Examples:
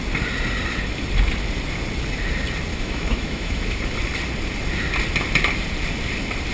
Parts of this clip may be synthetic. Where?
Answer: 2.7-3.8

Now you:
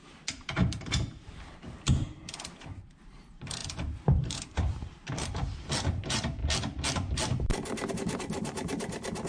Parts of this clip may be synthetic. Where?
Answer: 0.0-6.4; 7.9-9.3

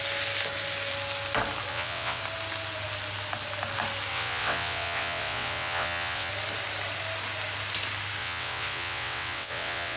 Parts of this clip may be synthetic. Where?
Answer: 1.7-2.2; 4.1-6.3; 8.2-10.0

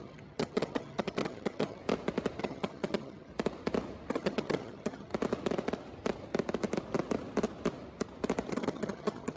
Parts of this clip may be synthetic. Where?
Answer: 0.0-1.8; 2.4-3.3; 4.1-5.1; 8.5-9.4